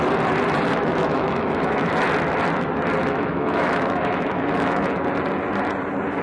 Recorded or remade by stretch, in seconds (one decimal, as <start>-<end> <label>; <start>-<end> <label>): 0.0-0.7 recorded; 0.7-1.9 remade; 1.9-3.0 recorded; 3.0-5.0 remade; 5.0-6.2 recorded

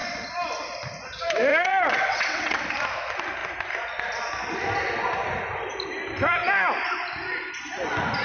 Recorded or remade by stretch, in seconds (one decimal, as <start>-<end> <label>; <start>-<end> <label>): 0.0-1.5 recorded; 1.5-2.6 remade; 2.6-8.2 recorded